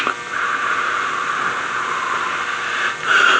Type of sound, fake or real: real